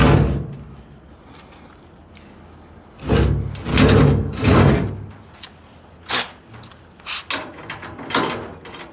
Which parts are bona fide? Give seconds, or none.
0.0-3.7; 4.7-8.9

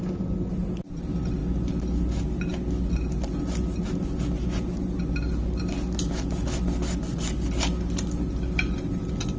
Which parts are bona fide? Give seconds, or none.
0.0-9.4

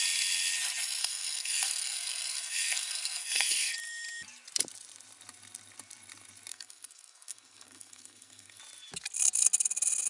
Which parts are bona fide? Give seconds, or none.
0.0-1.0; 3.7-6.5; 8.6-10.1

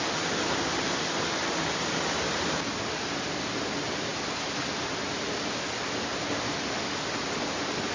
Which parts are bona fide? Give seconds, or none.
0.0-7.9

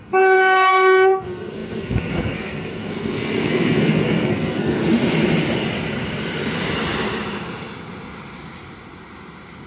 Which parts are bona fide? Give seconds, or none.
4.8-9.7

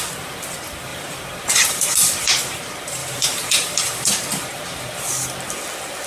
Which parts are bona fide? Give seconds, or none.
0.0-0.9; 1.9-3.0; 5.0-6.1